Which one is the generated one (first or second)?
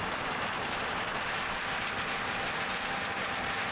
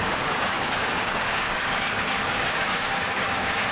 second